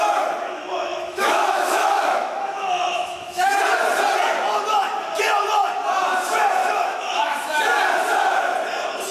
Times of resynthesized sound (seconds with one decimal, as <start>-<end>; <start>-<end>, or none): 0.9-3.6; 6.6-7.6